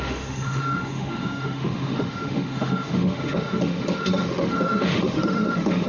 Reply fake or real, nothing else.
fake